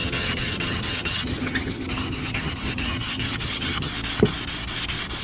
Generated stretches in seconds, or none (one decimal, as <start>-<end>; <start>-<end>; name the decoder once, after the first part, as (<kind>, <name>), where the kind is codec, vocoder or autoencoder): 0.0-3.9 (vocoder, HiFi-GAN)